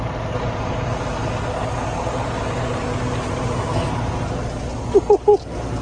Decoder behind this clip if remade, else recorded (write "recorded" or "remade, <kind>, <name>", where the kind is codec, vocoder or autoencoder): recorded